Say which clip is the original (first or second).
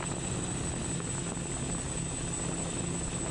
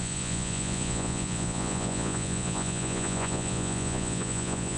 first